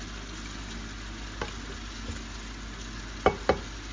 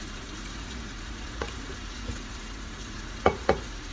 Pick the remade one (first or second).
second